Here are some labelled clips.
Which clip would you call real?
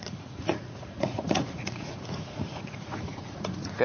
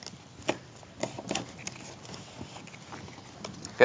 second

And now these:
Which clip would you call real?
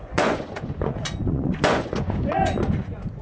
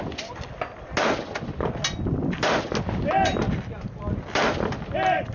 second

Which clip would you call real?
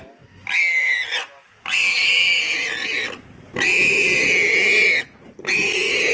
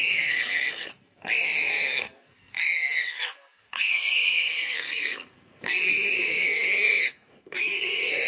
first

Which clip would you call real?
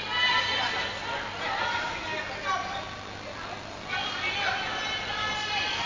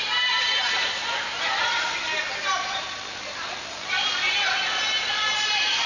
first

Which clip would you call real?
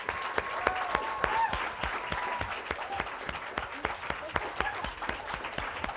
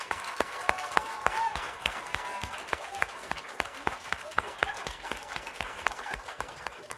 first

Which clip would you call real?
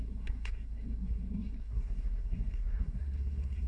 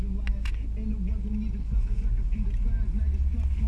second